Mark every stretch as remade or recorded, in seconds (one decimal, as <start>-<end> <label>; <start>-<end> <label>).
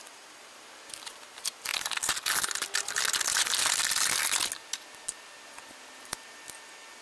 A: 0.0-7.0 recorded